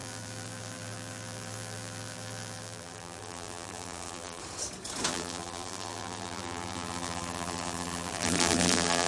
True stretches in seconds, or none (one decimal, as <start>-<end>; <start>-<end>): 4.4-5.1